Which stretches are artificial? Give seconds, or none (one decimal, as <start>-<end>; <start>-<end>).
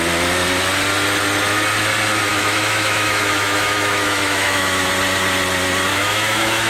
2.3-4.9; 5.9-6.7